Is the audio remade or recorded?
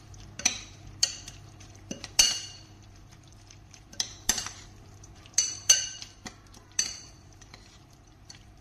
remade